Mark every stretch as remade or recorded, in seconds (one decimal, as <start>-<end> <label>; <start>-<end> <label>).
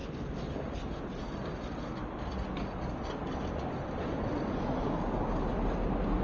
0.0-6.2 recorded